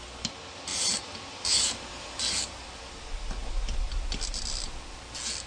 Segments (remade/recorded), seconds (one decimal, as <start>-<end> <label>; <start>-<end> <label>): 0.0-0.7 recorded; 0.7-4.0 remade; 4.0-5.5 recorded